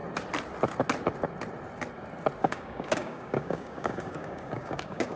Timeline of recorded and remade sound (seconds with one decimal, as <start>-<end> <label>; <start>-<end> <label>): 0.0-2.4 recorded; 2.4-5.2 remade